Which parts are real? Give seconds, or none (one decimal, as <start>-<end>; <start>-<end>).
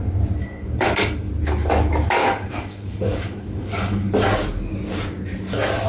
0.0-0.4; 1.3-2.2; 4.1-5.9